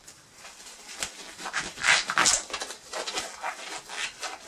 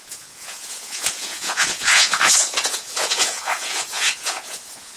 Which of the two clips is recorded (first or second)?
first